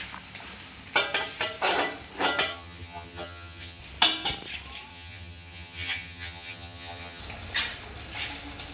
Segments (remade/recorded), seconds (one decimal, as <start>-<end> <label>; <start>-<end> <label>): 0.0-2.5 recorded; 2.5-3.8 remade; 3.8-4.9 recorded; 4.9-7.2 remade; 7.2-8.7 recorded